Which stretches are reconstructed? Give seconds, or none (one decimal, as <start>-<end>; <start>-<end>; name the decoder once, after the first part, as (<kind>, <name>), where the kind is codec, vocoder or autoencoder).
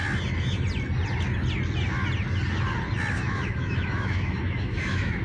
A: 3.1-5.2 (autoencoder, DAC-VAE)